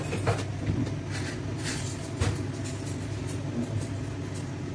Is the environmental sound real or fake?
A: real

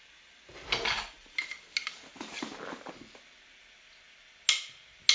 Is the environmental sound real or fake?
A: real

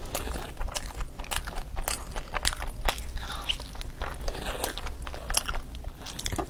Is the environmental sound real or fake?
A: real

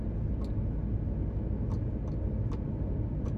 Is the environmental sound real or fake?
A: real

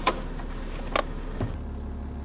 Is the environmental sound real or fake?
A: real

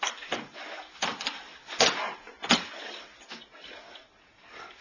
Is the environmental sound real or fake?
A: real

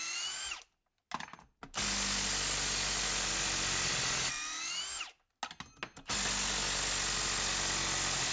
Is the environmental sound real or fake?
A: real